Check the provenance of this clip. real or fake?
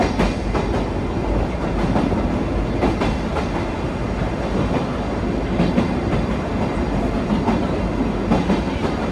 real